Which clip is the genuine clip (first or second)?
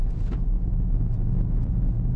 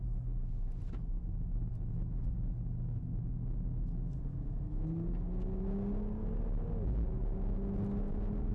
second